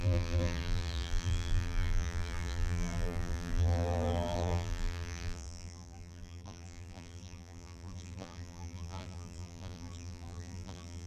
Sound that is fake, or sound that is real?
fake